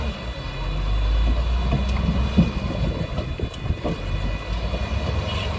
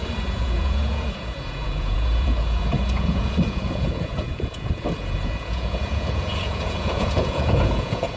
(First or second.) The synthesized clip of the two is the second